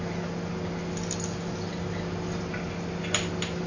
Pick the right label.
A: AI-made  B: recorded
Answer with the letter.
B